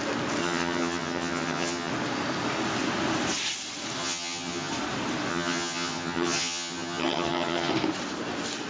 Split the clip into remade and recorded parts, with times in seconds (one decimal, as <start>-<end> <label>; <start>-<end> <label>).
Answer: 0.0-0.4 recorded; 0.4-1.9 remade; 1.9-4.0 recorded; 4.0-4.7 remade; 4.7-5.3 recorded; 5.3-7.7 remade; 7.7-8.7 recorded

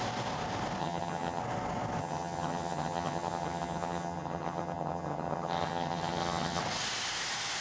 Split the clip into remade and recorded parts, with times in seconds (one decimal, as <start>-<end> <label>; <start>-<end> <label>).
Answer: 0.0-0.8 recorded; 0.8-1.4 remade; 1.4-2.0 recorded; 2.0-6.6 remade; 6.6-7.6 recorded

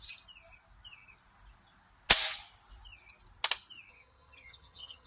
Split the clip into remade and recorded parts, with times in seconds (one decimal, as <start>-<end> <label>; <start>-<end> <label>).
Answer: 0.0-3.9 recorded; 3.9-5.1 remade

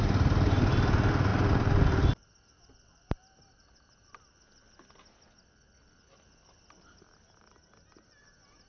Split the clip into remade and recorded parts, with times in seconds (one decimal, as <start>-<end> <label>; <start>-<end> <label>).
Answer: 0.0-8.7 recorded

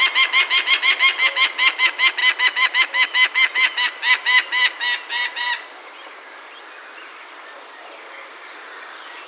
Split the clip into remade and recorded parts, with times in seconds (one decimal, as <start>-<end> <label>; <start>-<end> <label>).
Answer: 0.0-9.3 recorded